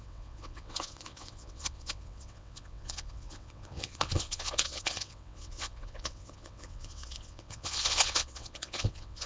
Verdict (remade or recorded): remade